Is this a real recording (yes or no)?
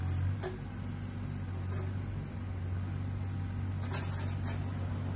yes